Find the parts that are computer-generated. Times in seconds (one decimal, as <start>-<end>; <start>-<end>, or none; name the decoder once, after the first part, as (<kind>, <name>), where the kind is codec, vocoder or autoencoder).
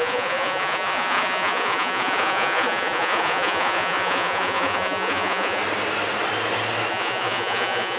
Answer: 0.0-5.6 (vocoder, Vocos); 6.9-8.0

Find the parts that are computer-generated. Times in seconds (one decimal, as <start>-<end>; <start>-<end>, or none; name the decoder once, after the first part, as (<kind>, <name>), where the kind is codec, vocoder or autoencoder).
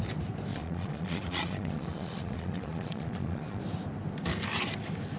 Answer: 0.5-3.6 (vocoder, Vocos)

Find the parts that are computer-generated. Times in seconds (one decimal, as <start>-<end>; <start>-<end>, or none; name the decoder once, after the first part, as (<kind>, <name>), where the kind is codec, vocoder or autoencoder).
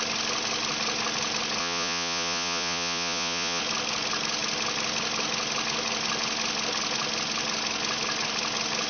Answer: 1.6-3.6 (vocoder, Vocos)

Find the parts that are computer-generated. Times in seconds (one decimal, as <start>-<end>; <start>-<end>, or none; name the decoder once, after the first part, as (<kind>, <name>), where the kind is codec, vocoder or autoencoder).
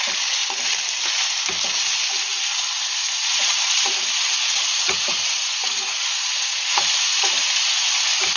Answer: 3.0-7.5 (vocoder, Vocos)